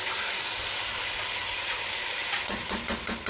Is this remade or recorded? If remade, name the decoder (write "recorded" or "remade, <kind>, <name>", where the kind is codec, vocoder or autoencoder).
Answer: recorded